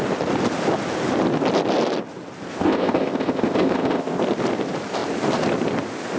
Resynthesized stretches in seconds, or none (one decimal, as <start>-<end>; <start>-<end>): 2.5-4.2